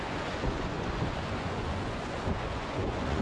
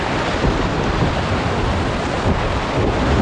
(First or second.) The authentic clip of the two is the second